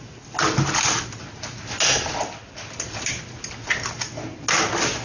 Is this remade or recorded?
recorded